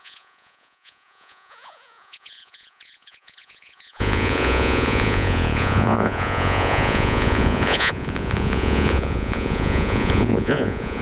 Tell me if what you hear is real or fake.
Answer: fake